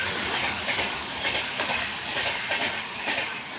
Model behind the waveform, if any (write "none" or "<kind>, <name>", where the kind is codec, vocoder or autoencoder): codec, DAC